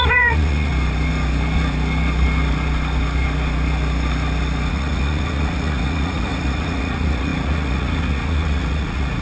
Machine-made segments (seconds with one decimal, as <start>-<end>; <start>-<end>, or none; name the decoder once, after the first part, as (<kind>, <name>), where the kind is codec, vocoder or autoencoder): 0.0-0.7 (vocoder, Vocos); 4.7-9.2